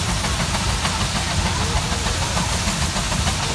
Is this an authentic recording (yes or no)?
yes